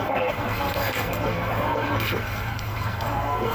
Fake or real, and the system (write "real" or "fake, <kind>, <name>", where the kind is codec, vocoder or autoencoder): fake, codec, SNAC